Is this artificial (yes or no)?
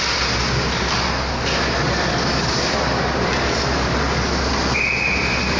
no